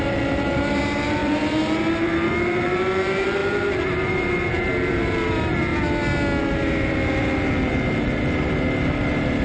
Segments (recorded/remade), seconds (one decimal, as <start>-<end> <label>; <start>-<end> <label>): 0.0-5.7 remade; 5.7-6.4 recorded; 6.4-9.4 remade